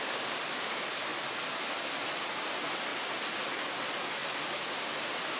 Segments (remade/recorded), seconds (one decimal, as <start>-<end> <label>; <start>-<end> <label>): 0.0-4.2 remade; 4.2-4.9 recorded; 4.9-5.4 remade